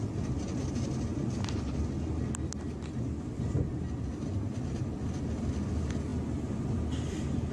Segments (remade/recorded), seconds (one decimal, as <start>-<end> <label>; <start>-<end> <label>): 0.0-7.5 recorded